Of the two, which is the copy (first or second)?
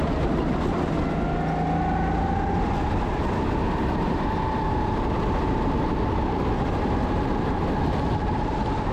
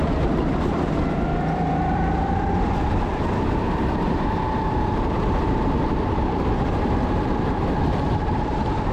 second